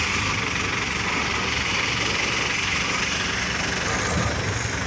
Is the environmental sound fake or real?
real